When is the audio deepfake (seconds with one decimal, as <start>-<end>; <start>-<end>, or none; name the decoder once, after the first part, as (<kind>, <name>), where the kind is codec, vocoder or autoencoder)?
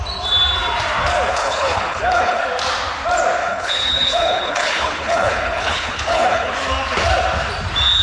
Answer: 1.3-2.4 (codec, HILCodec); 3.4-6.5